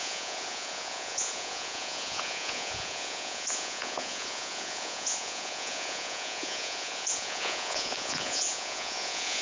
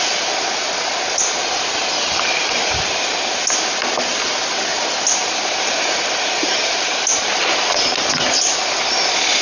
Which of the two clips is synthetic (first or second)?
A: first